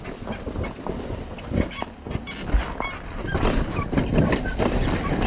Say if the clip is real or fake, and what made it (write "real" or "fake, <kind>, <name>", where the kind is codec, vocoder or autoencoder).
real